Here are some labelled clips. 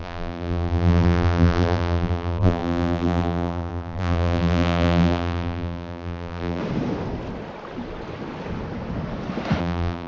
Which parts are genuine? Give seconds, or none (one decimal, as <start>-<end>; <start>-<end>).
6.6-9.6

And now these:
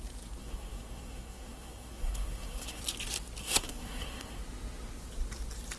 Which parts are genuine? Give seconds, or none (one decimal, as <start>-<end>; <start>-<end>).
0.0-0.4; 2.8-3.4; 4.4-5.8

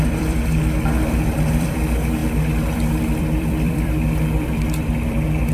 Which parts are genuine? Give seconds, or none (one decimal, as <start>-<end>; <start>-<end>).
2.2-3.2